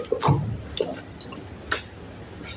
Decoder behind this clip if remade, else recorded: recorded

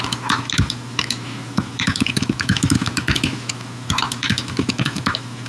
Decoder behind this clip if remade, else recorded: remade, autoencoder, DAC-VAE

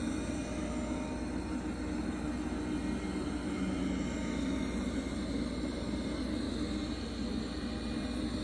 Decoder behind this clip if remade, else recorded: recorded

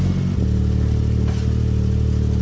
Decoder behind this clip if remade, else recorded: recorded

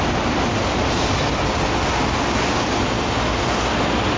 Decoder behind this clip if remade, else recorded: recorded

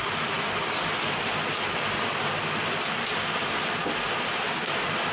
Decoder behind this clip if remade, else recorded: recorded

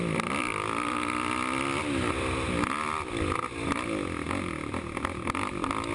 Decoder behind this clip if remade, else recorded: recorded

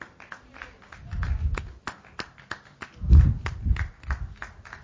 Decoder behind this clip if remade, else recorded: recorded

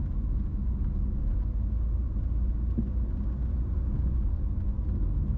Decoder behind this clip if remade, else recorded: recorded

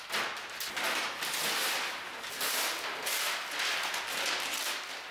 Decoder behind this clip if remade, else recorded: recorded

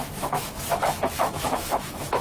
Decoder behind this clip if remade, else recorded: remade, autoencoder, DAC-VAE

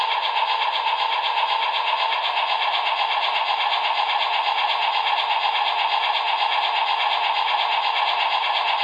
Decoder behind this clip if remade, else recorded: recorded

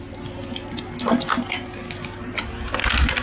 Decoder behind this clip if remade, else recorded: recorded